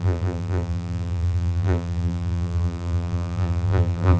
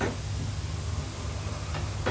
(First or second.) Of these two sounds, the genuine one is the second